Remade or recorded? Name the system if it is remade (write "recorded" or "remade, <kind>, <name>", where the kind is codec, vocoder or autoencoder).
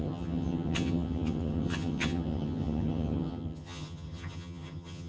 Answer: remade, vocoder, HiFi-GAN